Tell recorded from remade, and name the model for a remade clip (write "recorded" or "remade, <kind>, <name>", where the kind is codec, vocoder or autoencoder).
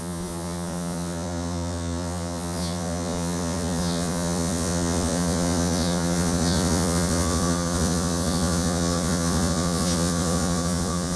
remade, vocoder, Vocos